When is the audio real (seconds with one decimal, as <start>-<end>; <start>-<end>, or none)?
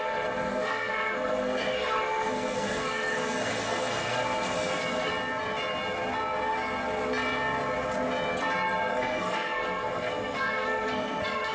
5.1-8.9